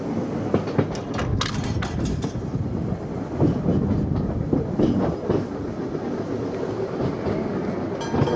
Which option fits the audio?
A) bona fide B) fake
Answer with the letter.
A